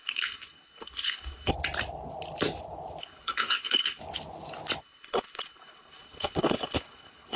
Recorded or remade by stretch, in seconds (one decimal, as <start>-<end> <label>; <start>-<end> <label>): 0.0-1.5 remade; 1.5-3.0 recorded; 3.0-4.0 remade; 4.0-4.8 recorded; 4.8-7.4 remade